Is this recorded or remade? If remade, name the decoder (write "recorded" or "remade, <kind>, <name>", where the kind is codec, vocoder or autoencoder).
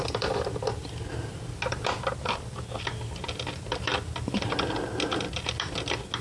recorded